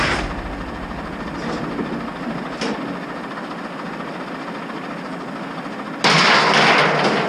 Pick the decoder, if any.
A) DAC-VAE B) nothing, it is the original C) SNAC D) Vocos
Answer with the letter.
B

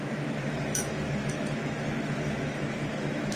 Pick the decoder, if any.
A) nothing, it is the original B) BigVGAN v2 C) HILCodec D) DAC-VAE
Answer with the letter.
D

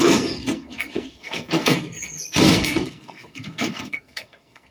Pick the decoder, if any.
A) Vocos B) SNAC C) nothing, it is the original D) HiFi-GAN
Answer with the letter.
B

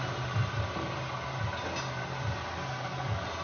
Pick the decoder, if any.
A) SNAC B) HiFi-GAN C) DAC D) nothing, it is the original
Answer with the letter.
D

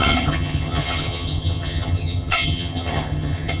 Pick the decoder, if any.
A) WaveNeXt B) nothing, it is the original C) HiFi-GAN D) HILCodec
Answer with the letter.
C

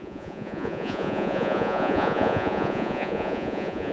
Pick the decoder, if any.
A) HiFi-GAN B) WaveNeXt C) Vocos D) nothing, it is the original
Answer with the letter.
C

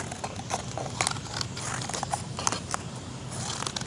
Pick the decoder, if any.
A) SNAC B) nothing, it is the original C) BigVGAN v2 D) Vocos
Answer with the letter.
B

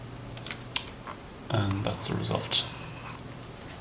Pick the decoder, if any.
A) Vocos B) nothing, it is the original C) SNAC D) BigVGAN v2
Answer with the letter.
B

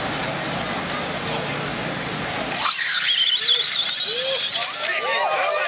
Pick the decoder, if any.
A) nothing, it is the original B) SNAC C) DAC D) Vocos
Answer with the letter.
A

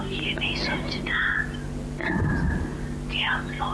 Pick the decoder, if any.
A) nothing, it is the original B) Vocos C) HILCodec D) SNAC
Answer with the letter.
A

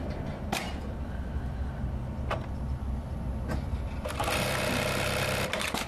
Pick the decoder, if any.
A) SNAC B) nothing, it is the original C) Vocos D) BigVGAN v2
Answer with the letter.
B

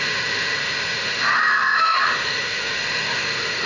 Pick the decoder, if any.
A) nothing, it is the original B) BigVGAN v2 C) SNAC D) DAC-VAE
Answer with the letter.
D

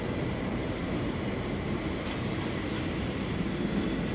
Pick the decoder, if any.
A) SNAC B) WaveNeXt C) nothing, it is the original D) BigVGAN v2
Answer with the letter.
C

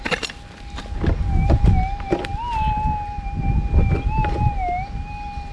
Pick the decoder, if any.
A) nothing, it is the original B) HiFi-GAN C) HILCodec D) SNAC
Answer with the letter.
A